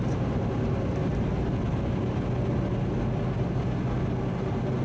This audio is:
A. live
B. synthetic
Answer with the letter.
A